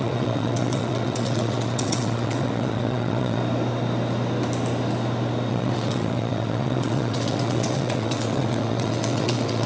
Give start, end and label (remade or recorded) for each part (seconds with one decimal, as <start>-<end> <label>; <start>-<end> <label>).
0.0-3.4 remade; 3.4-5.5 recorded; 5.5-9.7 remade